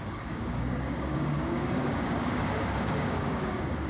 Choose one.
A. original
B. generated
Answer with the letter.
B